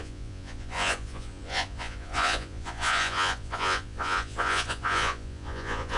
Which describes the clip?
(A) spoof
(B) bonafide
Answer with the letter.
A